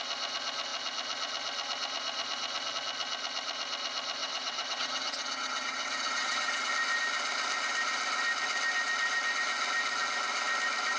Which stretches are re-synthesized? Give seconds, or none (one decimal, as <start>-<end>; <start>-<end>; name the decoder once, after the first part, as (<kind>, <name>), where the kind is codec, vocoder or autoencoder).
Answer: 4.2-6.7 (vocoder, WaveNeXt)

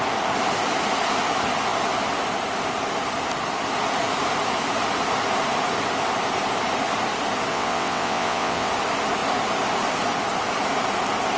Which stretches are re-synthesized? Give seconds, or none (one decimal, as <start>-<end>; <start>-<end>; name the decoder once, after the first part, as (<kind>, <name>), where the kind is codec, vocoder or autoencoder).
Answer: 7.5-8.7 (vocoder, WaveNeXt)